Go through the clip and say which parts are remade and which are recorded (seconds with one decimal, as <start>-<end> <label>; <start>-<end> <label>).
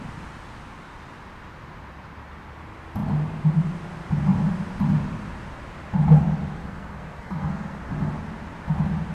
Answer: 0.0-6.6 recorded; 6.6-7.8 remade; 7.8-9.1 recorded